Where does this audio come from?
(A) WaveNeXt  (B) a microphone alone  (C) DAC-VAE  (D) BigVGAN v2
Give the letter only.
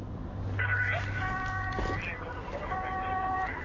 B